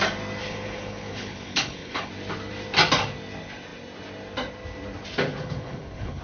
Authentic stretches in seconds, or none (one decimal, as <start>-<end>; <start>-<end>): 0.0-0.4; 2.1-5.4